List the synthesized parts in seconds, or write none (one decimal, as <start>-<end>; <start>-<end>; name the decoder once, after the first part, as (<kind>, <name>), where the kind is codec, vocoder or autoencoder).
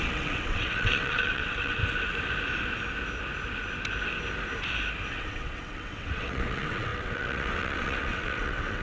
0.0-1.8 (vocoder, WaveNeXt); 5.1-8.8